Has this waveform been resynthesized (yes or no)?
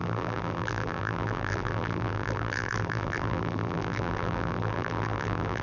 yes